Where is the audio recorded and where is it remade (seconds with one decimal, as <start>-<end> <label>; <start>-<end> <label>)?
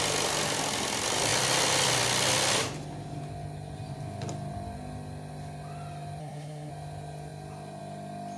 0.0-6.2 recorded; 6.2-6.7 remade; 6.7-8.4 recorded